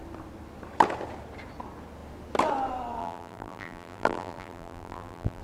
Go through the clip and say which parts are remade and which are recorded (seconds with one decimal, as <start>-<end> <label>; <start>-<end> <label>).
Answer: 0.0-3.0 recorded; 3.0-5.4 remade